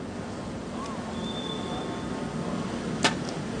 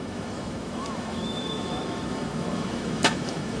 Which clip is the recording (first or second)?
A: first